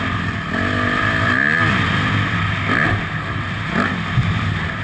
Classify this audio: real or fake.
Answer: real